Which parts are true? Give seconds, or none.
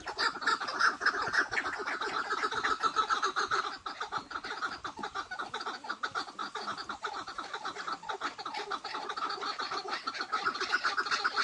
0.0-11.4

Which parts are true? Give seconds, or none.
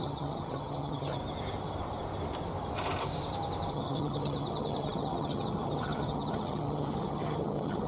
1.2-3.7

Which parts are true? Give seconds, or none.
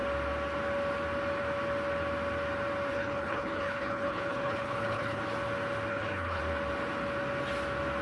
0.0-2.9; 5.2-5.9; 6.4-8.0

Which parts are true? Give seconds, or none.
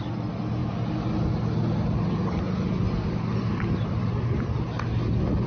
0.0-5.5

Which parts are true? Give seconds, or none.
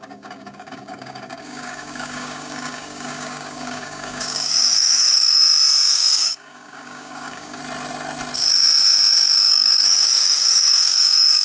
5.4-5.9; 7.6-9.5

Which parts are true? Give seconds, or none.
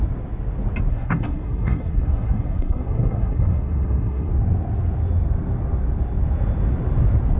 0.0-0.9; 4.3-7.4